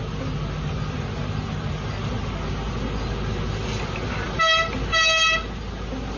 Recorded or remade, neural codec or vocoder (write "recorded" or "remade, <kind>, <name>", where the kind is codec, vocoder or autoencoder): recorded